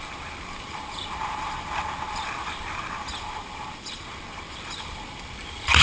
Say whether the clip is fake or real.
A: fake